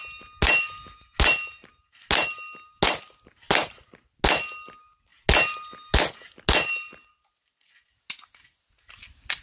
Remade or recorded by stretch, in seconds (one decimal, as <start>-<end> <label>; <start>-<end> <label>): 0.0-9.4 recorded